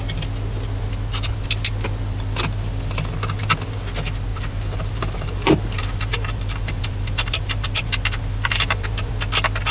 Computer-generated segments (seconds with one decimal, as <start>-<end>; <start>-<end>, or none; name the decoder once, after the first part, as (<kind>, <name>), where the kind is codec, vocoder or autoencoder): 4.3-9.1 (vocoder, BigVGAN v2)